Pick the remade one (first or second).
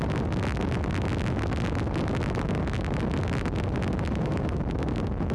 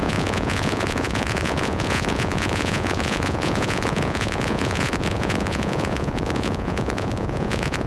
second